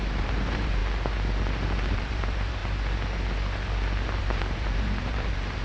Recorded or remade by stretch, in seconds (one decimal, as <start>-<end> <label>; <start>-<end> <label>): 0.0-0.8 remade; 0.8-1.9 recorded; 1.9-2.6 remade; 2.6-4.2 recorded; 4.2-5.6 remade